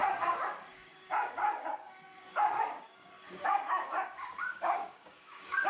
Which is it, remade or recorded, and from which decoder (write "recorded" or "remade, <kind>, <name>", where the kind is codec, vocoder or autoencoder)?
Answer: remade, codec, DAC